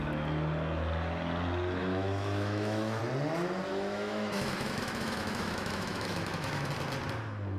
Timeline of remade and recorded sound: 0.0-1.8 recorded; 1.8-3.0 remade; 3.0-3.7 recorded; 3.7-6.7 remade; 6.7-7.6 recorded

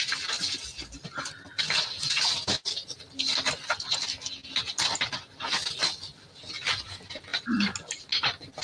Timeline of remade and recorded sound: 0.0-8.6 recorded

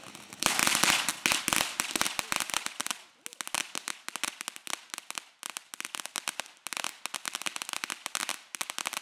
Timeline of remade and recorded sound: 0.0-9.0 recorded